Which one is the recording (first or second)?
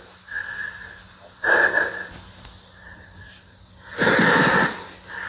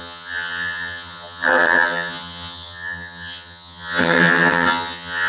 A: first